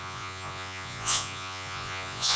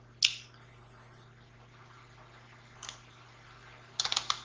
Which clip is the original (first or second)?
second